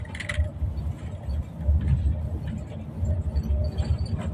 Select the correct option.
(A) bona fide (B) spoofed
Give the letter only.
A